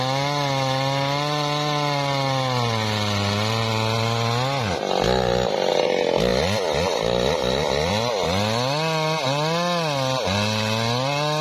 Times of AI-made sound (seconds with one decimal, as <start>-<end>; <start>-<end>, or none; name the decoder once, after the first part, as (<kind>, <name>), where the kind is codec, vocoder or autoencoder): none

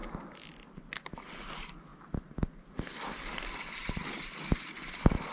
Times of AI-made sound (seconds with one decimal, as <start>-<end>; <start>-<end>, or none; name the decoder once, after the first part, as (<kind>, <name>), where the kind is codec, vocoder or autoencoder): none

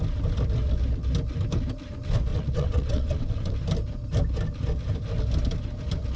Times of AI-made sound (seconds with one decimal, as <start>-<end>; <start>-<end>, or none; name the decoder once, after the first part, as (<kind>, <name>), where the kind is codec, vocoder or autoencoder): 2.3-3.5 (vocoder, WaveNeXt)

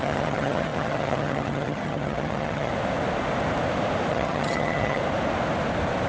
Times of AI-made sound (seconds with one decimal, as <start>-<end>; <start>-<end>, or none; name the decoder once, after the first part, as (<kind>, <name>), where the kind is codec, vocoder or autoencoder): 0.0-2.7 (vocoder, HiFi-GAN); 4.1-5.0

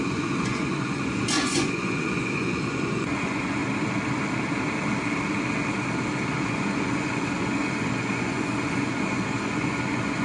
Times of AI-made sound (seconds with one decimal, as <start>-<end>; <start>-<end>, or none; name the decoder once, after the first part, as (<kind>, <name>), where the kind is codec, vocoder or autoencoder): 0.0-3.6 (vocoder, Vocos); 6.4-10.2

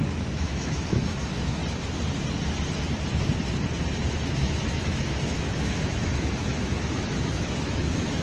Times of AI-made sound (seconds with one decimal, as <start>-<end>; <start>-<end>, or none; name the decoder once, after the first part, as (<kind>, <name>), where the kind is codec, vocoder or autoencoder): 0.0-1.6 (autoencoder, DAC-VAE); 4.4-8.2